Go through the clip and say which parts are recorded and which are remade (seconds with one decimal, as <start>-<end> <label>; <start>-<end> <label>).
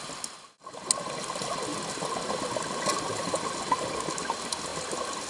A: 0.0-5.3 recorded